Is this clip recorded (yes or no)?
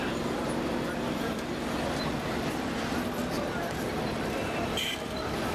yes